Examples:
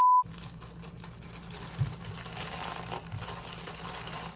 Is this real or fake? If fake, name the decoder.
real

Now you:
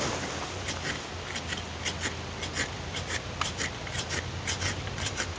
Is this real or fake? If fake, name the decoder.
real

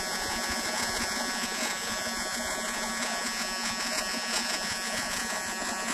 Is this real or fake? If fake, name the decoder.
fake, vocoder, Vocos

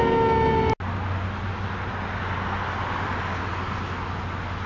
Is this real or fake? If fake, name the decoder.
real